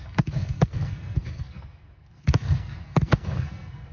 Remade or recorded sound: remade